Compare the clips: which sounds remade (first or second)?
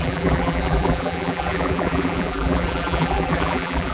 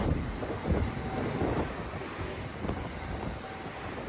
first